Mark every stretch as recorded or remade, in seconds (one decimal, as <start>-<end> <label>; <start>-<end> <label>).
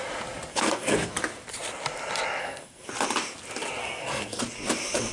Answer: 0.0-0.5 recorded; 0.5-1.1 remade; 1.1-2.4 recorded; 2.4-2.9 remade; 2.9-3.8 recorded; 3.8-4.4 remade; 4.4-5.1 recorded